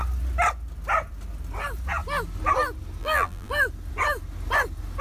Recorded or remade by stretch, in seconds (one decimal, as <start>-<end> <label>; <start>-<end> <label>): 0.0-3.0 recorded; 3.0-3.5 remade; 3.5-5.0 recorded